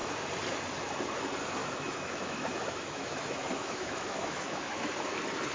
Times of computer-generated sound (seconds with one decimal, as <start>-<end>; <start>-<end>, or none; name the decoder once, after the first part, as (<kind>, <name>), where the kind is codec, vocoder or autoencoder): 1.6-4.9 (autoencoder, DAC-VAE)